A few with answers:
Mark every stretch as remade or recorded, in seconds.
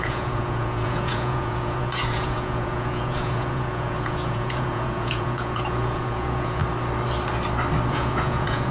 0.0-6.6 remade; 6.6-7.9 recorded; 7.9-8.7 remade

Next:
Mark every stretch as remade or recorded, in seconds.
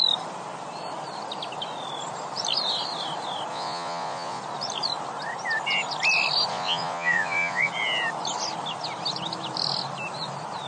0.0-3.5 recorded; 3.5-4.4 remade; 4.4-6.5 recorded; 6.5-7.7 remade; 7.7-10.7 recorded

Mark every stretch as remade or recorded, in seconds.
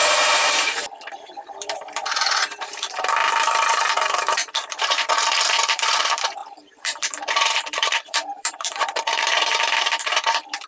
0.0-10.7 remade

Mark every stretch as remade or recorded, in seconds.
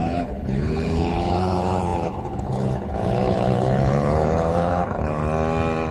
0.0-5.2 remade; 5.2-5.9 recorded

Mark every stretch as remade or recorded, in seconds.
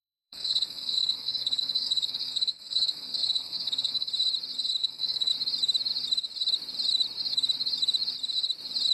0.0-4.1 remade; 4.1-4.8 recorded; 4.8-5.3 remade; 5.3-8.9 recorded